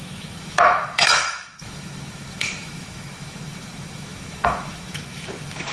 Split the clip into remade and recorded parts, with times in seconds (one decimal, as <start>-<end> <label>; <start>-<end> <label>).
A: 0.0-5.7 remade